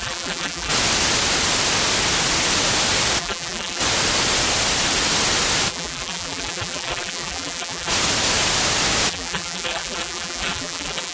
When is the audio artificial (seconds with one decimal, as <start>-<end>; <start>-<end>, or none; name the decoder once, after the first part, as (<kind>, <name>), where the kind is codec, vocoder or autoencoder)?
0.0-0.7 (vocoder, BigVGAN v2); 3.2-3.8; 5.7-7.9; 9.1-11.1